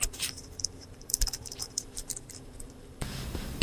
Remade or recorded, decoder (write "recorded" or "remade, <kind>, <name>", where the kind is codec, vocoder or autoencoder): remade, vocoder, BigVGAN v2